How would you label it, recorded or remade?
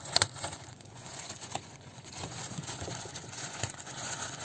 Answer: remade